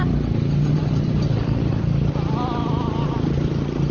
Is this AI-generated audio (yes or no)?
no